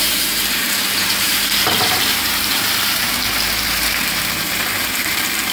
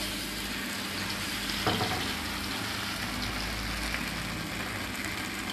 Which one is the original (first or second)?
second